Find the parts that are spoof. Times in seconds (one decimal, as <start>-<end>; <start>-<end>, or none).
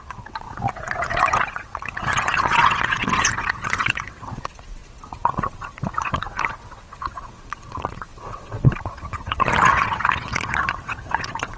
0.0-11.6